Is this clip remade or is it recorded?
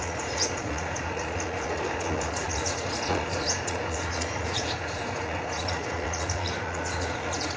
remade